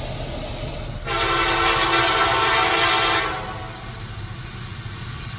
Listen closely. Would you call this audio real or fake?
real